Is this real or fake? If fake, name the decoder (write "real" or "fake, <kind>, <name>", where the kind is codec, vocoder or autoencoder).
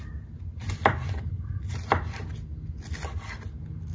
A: real